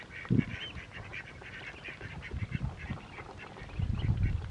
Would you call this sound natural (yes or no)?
yes